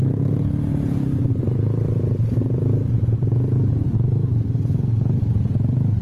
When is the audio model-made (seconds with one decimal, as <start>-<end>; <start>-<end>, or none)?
0.7-1.4